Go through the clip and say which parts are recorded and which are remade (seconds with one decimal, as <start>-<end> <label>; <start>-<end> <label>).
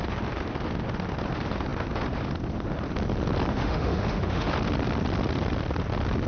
0.0-3.5 recorded; 3.5-4.5 remade; 4.5-6.3 recorded